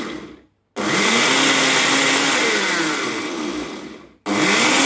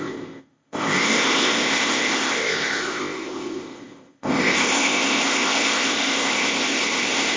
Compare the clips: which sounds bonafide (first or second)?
first